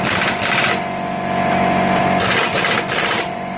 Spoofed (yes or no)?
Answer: no